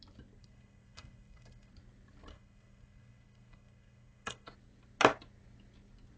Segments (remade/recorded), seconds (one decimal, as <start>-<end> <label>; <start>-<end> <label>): 0.0-0.4 recorded; 0.4-1.7 remade; 1.7-2.3 recorded; 2.3-4.5 remade; 4.5-6.2 recorded